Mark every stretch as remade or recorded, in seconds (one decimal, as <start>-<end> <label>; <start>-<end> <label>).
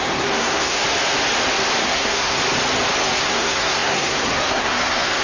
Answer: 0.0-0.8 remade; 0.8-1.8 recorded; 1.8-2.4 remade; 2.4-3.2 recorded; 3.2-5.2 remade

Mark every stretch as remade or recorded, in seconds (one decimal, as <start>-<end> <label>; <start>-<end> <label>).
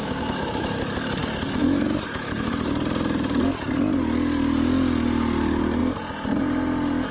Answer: 0.0-1.2 remade; 1.2-1.6 recorded; 1.6-2.5 remade; 2.5-7.1 recorded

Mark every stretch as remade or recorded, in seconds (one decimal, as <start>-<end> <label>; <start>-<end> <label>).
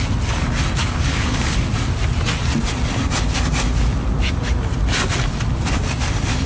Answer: 0.0-0.8 recorded; 0.8-1.7 remade; 1.7-6.5 recorded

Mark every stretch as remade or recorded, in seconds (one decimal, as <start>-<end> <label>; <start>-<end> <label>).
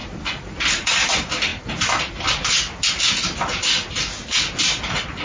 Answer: 0.0-5.2 recorded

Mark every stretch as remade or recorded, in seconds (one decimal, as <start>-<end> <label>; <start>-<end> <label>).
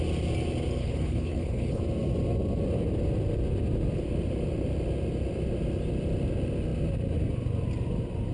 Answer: 0.0-0.8 recorded; 0.8-1.8 remade; 1.8-8.3 recorded